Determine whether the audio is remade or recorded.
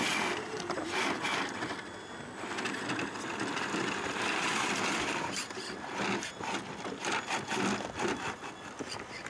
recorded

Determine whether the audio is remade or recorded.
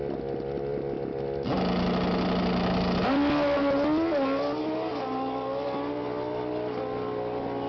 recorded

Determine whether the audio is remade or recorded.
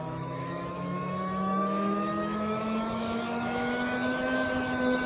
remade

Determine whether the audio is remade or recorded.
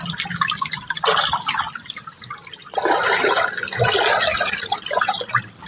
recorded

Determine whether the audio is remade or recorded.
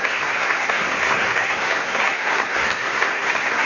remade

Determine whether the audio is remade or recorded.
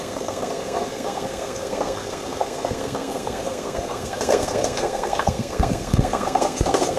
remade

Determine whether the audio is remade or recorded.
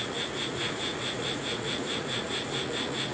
remade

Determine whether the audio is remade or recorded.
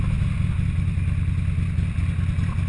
recorded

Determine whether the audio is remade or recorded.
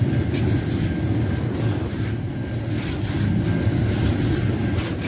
recorded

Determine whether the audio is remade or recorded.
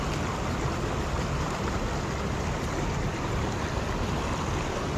recorded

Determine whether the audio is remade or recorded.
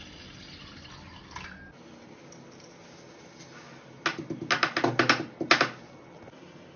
recorded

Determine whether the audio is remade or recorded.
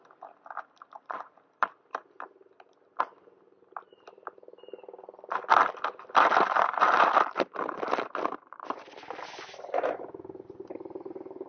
remade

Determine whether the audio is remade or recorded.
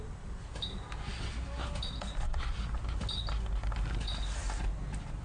recorded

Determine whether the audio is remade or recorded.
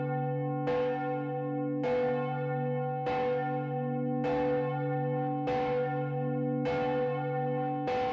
recorded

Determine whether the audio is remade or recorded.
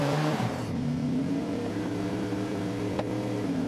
remade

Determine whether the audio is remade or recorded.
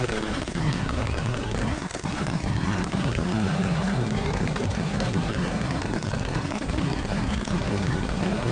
remade